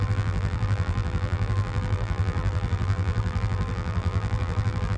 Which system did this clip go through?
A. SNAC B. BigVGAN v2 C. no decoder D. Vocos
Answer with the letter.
B